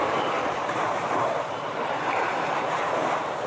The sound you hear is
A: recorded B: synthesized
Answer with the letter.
B